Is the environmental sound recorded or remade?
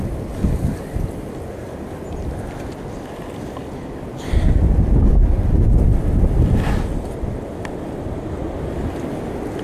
recorded